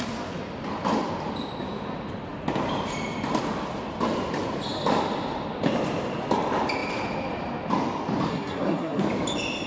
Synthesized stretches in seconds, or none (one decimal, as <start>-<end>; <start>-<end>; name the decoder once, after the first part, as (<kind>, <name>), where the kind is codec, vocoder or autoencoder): 8.3-9.0 (codec, SNAC)